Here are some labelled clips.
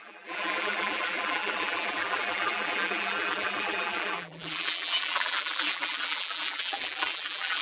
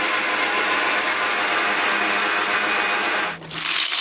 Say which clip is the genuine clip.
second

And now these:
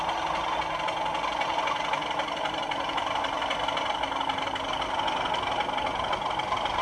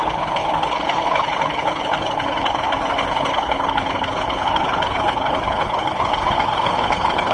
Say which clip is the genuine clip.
first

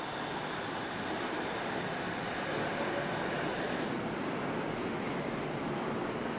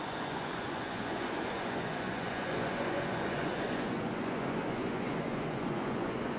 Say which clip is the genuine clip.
first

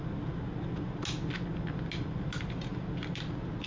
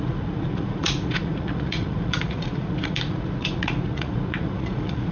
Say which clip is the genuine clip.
first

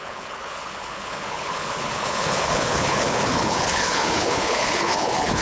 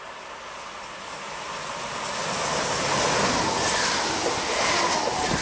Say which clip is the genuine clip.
second